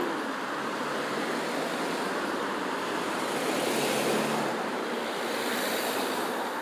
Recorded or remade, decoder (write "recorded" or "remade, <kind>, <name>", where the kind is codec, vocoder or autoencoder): remade, vocoder, BigVGAN v2